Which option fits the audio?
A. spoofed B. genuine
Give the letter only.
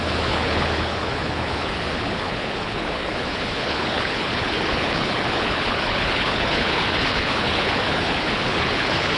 A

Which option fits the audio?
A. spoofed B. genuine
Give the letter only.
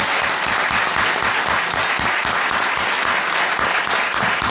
B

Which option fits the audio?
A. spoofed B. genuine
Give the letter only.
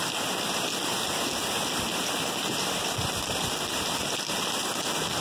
B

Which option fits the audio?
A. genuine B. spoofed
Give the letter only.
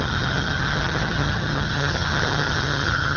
B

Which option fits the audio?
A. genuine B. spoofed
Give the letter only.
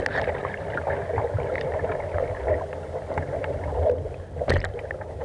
A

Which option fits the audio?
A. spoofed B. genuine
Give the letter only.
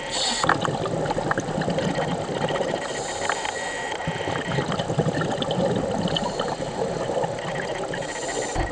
B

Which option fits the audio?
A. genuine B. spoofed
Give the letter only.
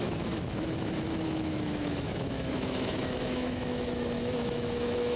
B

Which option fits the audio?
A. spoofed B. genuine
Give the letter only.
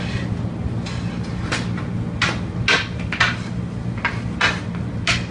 B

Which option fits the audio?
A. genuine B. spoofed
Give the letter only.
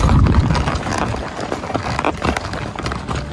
A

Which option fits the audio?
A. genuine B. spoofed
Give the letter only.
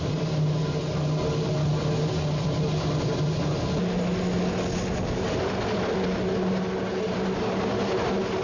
A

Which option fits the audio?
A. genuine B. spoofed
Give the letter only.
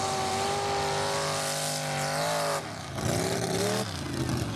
A